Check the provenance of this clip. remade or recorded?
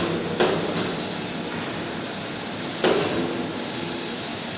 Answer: recorded